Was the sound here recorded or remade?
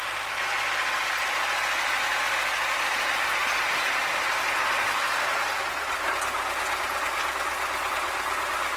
recorded